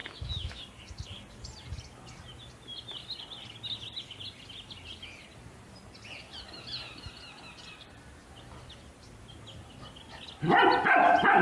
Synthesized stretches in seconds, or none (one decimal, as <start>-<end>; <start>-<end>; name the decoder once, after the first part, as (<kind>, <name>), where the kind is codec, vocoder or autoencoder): 0.0-0.6 (autoencoder, DAC-VAE)